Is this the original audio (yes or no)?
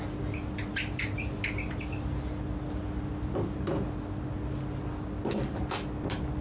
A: yes